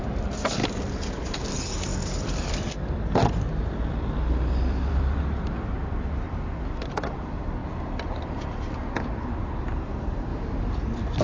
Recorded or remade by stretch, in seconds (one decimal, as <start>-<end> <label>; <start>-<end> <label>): 0.0-0.6 remade; 0.6-1.2 recorded; 1.2-7.6 remade; 7.6-9.6 recorded; 9.6-10.3 remade; 10.3-11.2 recorded